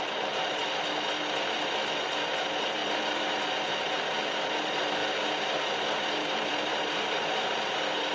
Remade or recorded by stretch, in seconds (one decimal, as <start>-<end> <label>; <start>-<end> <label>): 0.0-0.6 remade; 0.6-2.2 recorded; 2.2-2.8 remade; 2.8-4.3 recorded; 4.3-5.0 remade; 5.0-5.6 recorded; 5.6-8.1 remade